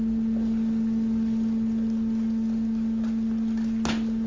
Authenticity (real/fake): real